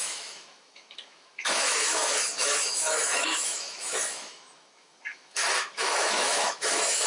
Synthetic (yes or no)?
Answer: yes